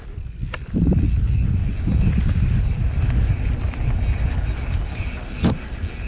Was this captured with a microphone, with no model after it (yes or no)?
yes